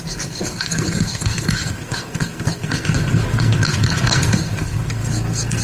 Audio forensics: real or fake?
fake